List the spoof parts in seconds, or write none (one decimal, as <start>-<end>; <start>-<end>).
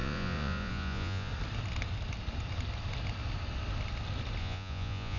0.0-1.3; 4.4-5.2